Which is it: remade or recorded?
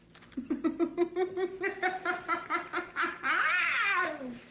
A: recorded